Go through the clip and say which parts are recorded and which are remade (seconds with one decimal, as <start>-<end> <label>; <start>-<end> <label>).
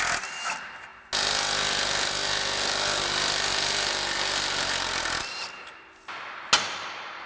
0.0-7.3 recorded